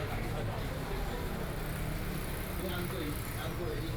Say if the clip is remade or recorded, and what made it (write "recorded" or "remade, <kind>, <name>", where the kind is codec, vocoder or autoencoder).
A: recorded